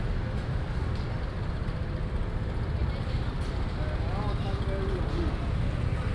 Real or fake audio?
real